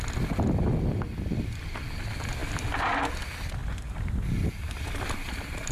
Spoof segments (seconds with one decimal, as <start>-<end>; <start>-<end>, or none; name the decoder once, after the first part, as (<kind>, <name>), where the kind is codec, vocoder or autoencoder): none

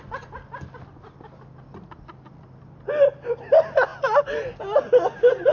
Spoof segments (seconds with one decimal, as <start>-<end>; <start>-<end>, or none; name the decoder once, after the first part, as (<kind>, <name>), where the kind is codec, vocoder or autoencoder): none